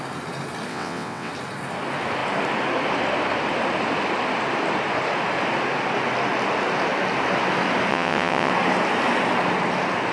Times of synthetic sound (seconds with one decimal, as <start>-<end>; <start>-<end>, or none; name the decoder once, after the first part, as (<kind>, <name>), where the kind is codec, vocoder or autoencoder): 0.7-1.3 (vocoder, WaveNeXt); 7.9-8.5